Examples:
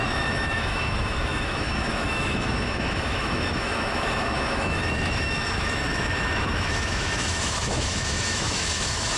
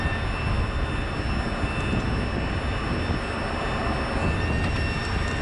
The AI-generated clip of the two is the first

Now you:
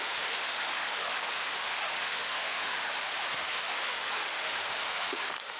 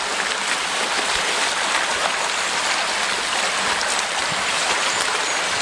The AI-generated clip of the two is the first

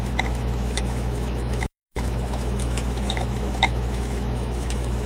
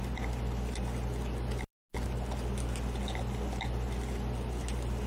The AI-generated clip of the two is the first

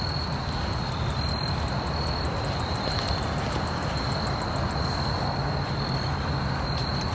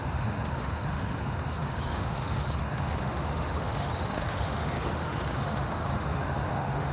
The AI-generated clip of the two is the second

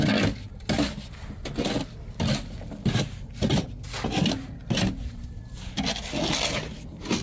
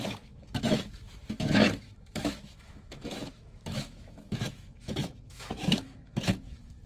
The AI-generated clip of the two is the second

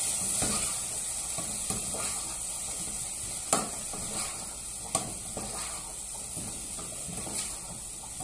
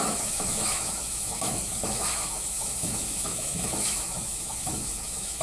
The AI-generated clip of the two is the second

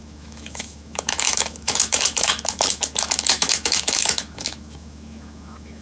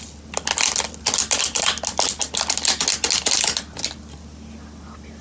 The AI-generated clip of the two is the first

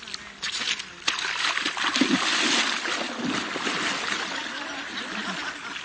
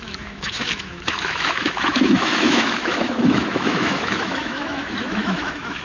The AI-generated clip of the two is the second